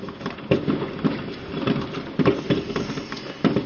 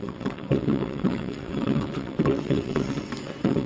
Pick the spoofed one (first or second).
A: second